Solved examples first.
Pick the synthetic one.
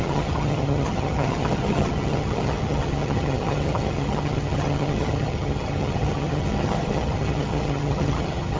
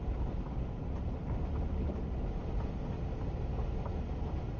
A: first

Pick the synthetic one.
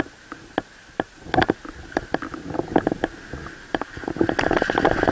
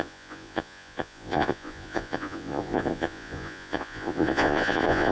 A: second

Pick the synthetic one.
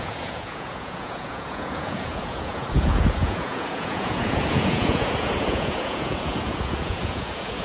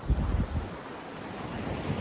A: first